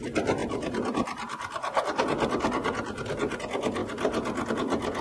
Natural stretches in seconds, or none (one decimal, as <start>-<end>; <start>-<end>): 0.0-5.0